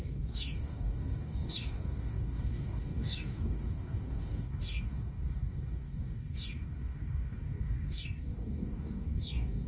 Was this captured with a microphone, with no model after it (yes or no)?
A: no